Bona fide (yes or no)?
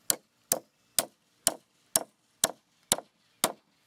yes